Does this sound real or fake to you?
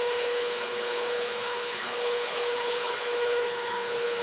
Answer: fake